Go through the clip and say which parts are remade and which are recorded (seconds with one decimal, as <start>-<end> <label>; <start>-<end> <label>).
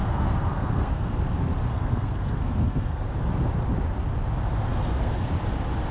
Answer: 0.0-1.2 remade; 1.2-1.7 recorded; 1.7-3.0 remade; 3.0-4.7 recorded; 4.7-5.3 remade; 5.3-5.9 recorded